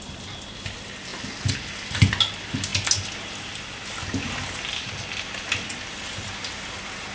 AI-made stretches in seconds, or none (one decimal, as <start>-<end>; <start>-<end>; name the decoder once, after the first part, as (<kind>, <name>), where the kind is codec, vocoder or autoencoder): none